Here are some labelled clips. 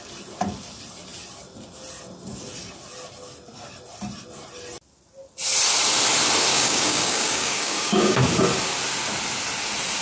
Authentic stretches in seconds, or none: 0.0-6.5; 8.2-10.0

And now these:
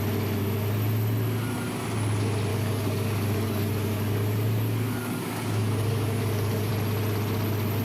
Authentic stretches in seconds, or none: 0.0-2.5; 6.7-7.8

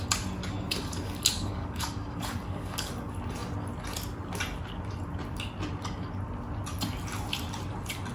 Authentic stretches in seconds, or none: 0.0-0.4; 2.9-8.1

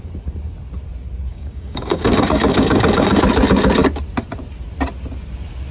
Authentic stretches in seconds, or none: 0.0-1.3; 3.2-5.7

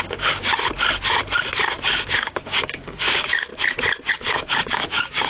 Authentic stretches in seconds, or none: 0.5-1.9; 3.5-4.1

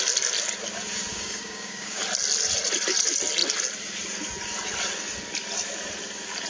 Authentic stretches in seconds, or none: 0.0-1.1; 2.0-6.5